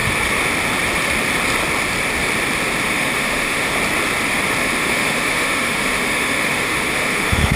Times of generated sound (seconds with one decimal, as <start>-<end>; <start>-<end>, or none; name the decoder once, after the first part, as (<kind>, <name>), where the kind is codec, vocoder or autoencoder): 2.9-3.7 (autoencoder, DAC-VAE); 4.6-7.6